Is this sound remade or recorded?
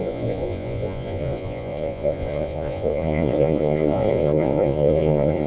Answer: remade